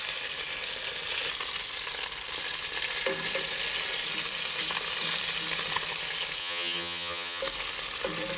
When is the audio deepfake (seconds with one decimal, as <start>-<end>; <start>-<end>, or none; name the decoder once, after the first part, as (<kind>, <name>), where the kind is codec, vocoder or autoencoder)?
6.4-7.4 (vocoder, HiFi-GAN)